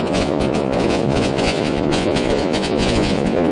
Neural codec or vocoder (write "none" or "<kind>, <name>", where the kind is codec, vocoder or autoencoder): vocoder, Vocos